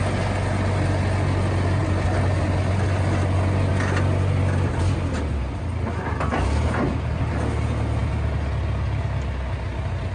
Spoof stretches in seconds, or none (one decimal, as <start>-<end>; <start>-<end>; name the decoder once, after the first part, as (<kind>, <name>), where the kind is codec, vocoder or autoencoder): none